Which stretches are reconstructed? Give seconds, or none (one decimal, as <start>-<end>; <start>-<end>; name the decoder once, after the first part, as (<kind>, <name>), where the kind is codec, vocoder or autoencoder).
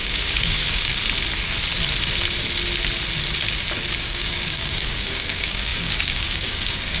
0.0-0.9 (codec, DAC); 4.0-7.0